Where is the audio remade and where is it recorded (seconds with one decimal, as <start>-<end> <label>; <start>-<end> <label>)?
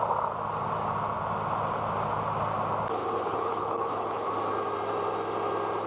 0.0-3.0 recorded; 3.0-4.3 remade; 4.3-5.9 recorded